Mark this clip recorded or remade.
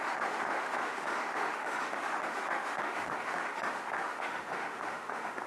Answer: remade